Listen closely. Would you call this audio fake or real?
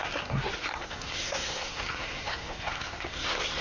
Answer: fake